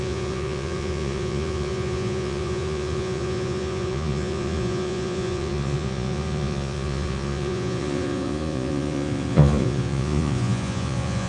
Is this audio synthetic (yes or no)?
yes